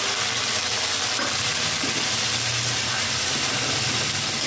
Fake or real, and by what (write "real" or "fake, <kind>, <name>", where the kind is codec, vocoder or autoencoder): real